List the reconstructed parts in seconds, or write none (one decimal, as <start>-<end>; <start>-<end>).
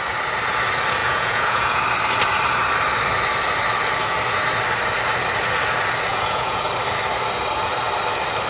1.0-1.8; 6.1-6.6